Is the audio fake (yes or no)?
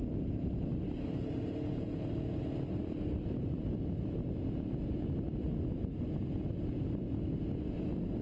no